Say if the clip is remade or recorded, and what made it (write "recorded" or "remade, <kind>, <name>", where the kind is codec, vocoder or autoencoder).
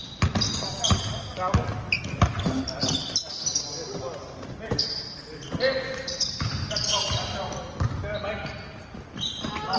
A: recorded